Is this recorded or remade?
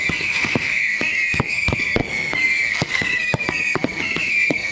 remade